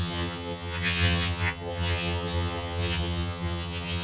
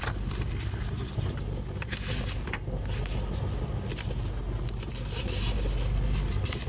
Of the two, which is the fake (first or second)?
first